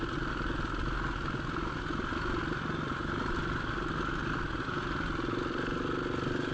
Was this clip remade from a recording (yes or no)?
no